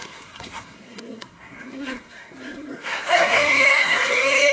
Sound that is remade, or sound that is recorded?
remade